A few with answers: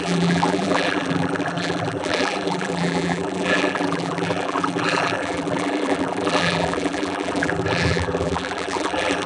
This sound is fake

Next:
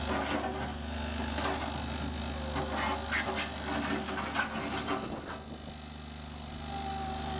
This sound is real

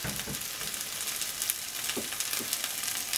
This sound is real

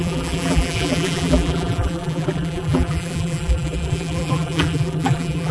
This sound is fake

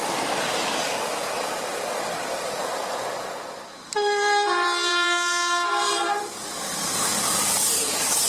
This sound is fake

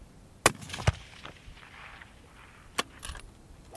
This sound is real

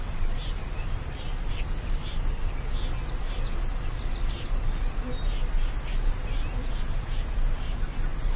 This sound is real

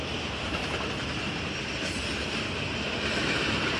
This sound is real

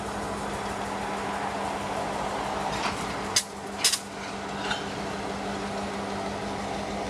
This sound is real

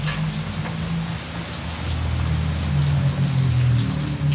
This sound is real